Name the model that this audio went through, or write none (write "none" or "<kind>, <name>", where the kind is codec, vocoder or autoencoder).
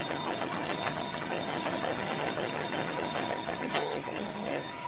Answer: vocoder, HiFi-GAN